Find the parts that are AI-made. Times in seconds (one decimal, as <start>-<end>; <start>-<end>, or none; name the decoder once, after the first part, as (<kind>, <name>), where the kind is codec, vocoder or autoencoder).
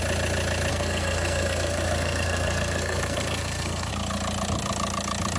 0.7-3.9 (codec, SNAC)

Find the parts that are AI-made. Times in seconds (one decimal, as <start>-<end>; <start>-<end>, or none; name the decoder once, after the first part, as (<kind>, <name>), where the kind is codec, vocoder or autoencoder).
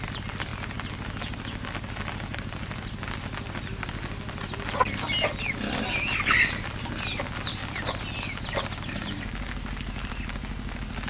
none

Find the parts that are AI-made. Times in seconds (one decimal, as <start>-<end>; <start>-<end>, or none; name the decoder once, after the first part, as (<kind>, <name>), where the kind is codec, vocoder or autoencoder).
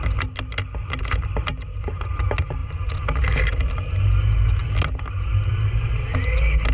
none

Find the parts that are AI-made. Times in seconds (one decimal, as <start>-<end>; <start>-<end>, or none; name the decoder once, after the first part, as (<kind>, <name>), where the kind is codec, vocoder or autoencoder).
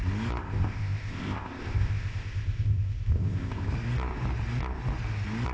0.4-3.7 (codec, ZipCodec)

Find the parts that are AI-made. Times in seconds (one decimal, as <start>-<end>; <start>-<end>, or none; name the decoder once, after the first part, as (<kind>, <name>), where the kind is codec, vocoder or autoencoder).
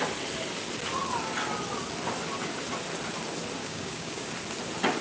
3.6-4.3 (codec, DAC)